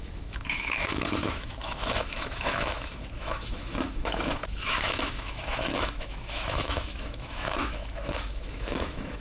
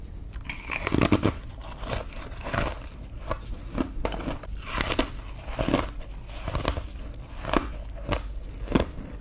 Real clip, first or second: second